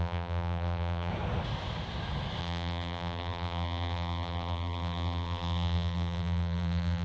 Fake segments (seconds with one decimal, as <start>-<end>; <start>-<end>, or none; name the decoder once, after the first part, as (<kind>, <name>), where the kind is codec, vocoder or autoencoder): 0.0-1.1 (vocoder, BigVGAN v2); 2.4-7.0